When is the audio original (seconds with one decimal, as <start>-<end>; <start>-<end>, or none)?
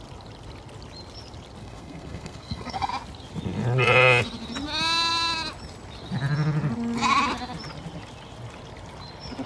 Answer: 0.0-1.6; 2.9-9.5